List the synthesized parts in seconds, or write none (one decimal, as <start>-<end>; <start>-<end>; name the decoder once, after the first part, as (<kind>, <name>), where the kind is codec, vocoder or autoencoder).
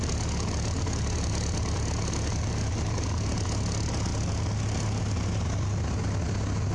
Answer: none